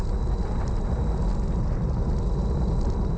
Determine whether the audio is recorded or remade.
recorded